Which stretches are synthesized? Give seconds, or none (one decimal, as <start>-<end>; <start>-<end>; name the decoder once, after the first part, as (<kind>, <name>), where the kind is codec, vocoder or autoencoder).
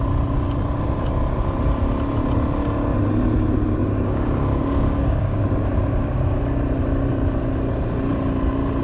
3.8-5.4 (codec, DAC)